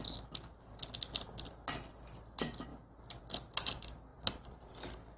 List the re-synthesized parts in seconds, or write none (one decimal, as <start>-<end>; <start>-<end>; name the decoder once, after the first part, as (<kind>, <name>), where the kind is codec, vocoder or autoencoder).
4.1-4.7 (vocoder, BigVGAN v2)